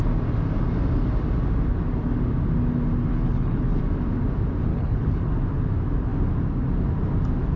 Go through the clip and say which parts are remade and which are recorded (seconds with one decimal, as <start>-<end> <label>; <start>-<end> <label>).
0.0-3.1 recorded; 3.1-3.8 remade; 3.8-4.7 recorded; 4.7-5.3 remade; 5.3-7.6 recorded